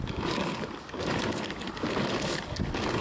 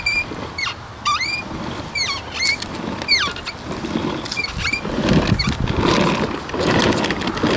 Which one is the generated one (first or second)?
first